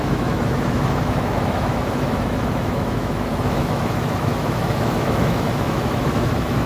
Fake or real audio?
fake